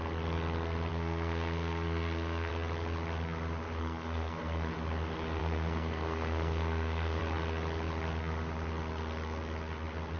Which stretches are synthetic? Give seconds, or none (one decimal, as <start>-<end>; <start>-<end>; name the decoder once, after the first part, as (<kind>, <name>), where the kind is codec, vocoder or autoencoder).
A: 0.9-2.5 (codec, SNAC); 3.8-4.7; 5.4-7.2